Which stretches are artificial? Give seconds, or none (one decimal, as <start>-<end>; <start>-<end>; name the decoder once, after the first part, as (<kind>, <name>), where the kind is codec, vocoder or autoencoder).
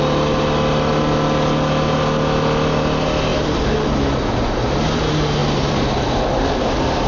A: 3.3-3.8 (vocoder, BigVGAN v2); 5.4-7.1